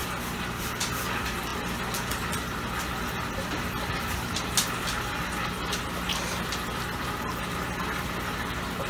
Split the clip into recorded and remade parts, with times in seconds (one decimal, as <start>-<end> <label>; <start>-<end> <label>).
0.0-8.9 recorded